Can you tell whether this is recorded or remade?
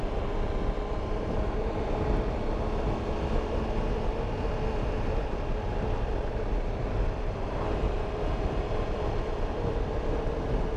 recorded